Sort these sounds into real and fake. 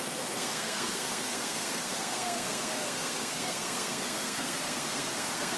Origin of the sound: fake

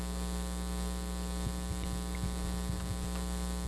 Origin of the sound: real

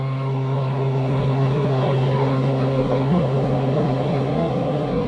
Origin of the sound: fake